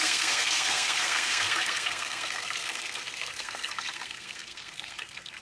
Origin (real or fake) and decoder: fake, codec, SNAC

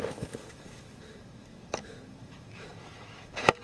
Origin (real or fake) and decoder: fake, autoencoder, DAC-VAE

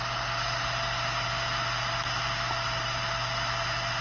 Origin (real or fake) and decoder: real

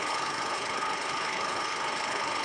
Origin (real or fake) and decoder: fake, codec, HILCodec